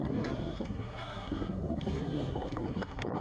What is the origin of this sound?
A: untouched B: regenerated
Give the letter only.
B